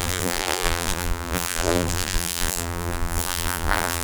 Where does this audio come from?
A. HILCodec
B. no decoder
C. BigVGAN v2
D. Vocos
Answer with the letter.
C